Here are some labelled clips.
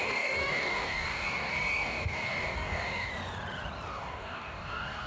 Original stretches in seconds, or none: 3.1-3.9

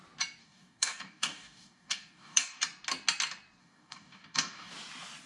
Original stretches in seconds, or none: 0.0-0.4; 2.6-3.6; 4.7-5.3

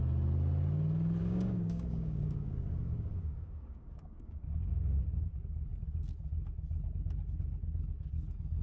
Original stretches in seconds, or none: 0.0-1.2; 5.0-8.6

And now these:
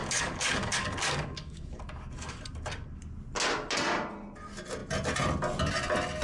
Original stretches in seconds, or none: 2.4-6.2